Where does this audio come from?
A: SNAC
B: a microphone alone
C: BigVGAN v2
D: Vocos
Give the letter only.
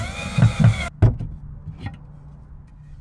B